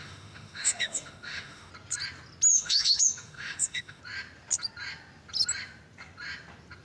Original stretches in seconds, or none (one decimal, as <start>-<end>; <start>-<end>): 1.7-2.5; 4.0-6.8